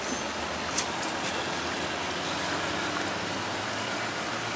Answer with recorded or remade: recorded